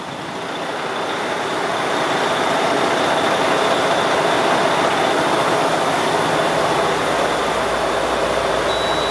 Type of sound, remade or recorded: recorded